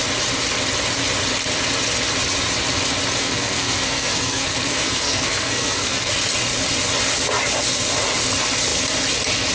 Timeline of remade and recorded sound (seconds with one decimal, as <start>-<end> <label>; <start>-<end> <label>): 0.0-3.2 recorded; 3.2-6.1 remade; 6.1-9.5 recorded